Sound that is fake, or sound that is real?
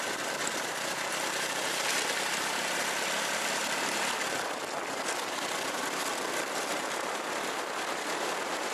fake